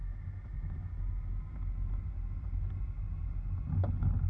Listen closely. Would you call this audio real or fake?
real